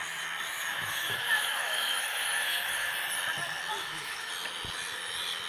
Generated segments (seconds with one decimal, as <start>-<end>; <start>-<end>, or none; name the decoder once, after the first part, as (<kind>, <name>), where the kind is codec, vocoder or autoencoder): 0.7-2.9 (autoencoder, DAC-VAE); 3.8-4.3